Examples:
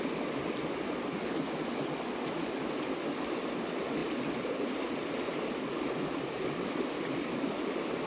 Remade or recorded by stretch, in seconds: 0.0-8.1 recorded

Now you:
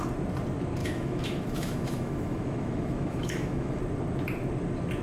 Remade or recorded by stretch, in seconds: 0.0-0.8 recorded; 0.8-3.8 remade; 3.8-5.0 recorded

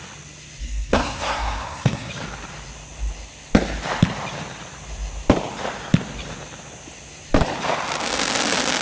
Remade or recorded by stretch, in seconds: 0.0-0.6 recorded; 0.6-2.1 remade; 2.1-8.8 recorded

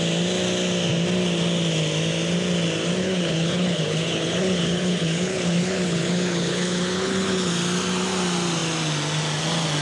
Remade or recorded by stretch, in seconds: 0.0-3.0 recorded; 3.0-7.5 remade; 7.5-9.8 recorded

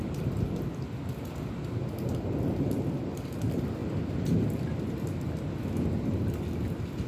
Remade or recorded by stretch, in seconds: 0.0-7.1 recorded

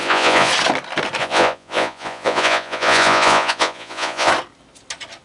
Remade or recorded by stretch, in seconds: 0.0-0.5 remade; 0.5-1.2 recorded; 1.2-4.3 remade; 4.3-5.2 recorded

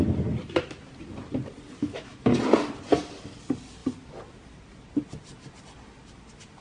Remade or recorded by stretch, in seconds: 0.0-1.8 recorded; 1.8-2.3 remade; 2.3-6.6 recorded

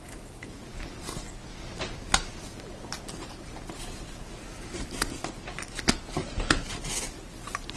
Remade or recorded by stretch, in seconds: 0.0-7.8 recorded